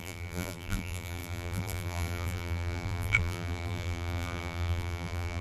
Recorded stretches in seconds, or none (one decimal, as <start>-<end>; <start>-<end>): none

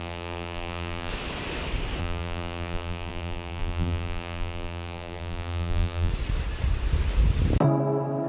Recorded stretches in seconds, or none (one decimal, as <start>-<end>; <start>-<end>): 1.1-2.0; 6.1-8.3

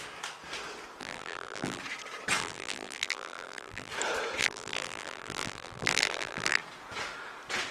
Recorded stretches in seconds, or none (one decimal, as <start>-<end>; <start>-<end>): 0.0-1.0; 1.8-2.4; 3.9-4.4; 6.6-7.7

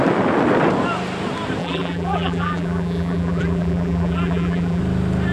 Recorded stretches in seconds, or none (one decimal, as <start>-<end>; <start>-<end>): 0.0-1.6; 4.8-5.3

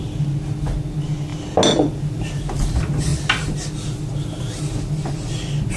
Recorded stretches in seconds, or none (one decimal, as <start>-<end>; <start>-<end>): 0.0-5.8

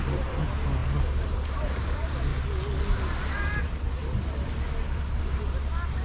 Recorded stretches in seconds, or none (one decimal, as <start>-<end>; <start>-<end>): 0.8-1.6; 2.3-3.3; 4.0-5.2

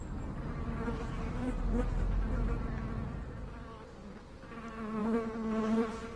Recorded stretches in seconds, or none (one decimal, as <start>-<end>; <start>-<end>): 2.7-6.2

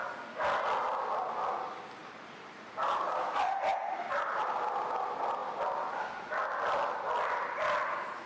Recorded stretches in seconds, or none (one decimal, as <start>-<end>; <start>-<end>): 0.0-2.0; 4.4-8.3